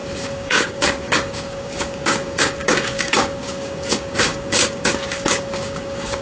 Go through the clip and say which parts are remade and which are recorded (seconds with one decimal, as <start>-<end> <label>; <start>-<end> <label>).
0.0-6.2 remade